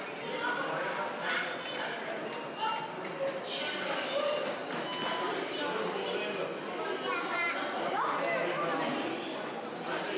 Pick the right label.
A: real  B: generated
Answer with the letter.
A